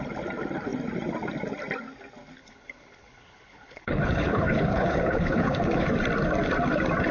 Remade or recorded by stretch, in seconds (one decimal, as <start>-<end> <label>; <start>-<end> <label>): 0.0-2.4 recorded; 2.4-5.9 remade; 5.9-7.1 recorded